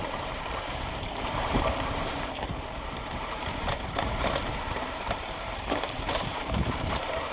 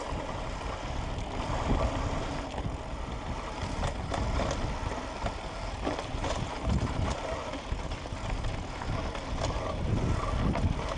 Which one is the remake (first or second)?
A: first